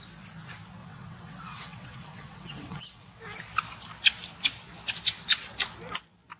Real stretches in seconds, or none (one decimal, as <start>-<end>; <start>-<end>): 0.0-0.8; 3.2-6.4